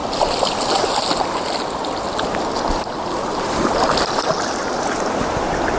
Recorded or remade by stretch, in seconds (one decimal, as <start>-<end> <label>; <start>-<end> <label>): 0.0-3.3 recorded; 3.3-4.6 remade; 4.6-5.8 recorded